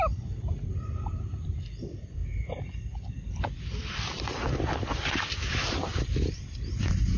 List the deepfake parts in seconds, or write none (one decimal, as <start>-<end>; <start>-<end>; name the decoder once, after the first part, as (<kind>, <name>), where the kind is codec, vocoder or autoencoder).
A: 0.0-2.2 (vocoder, BigVGAN v2); 3.4-7.2